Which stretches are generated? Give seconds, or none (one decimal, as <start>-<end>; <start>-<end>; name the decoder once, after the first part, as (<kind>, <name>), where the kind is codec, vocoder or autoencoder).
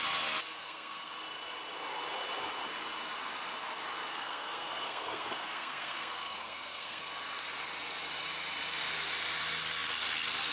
0.6-1.1 (codec, SNAC); 4.1-7.0